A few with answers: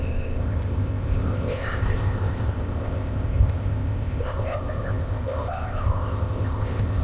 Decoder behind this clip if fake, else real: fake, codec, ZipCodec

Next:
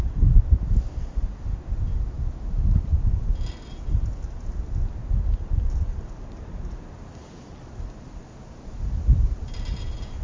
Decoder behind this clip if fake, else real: real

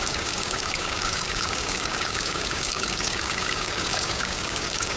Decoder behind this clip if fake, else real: fake, codec, DAC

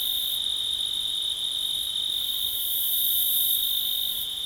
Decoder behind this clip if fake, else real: fake, vocoder, BigVGAN v2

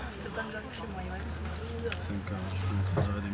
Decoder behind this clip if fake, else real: real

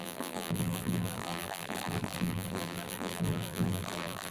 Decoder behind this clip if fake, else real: fake, vocoder, BigVGAN v2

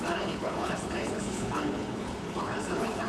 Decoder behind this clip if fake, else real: fake, codec, HILCodec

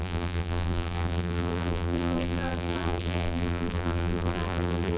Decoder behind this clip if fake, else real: fake, vocoder, BigVGAN v2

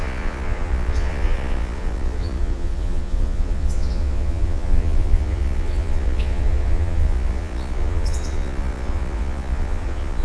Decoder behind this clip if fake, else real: fake, vocoder, Vocos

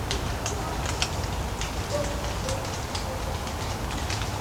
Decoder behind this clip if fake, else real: real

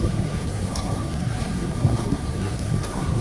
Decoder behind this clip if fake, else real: fake, codec, SNAC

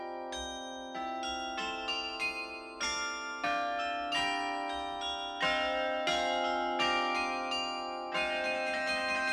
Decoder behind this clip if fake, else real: real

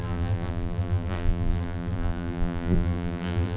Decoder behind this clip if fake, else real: fake, vocoder, BigVGAN v2